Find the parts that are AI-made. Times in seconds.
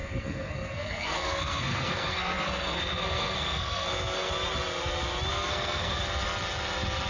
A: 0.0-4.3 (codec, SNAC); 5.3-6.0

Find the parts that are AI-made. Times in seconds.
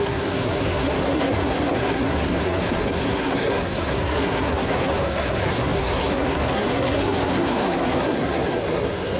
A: 0.0-9.2 (codec, SNAC)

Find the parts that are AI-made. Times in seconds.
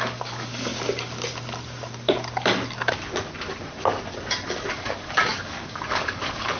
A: 0.0-0.7 (codec, DAC); 4.7-6.6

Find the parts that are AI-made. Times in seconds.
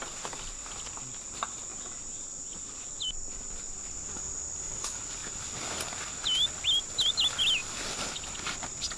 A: none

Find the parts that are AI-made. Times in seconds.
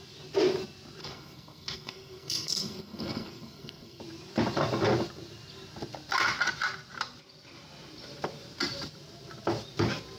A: 1.0-4.0 (codec, SNAC)